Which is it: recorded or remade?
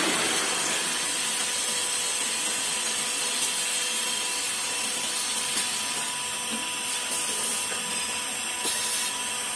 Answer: recorded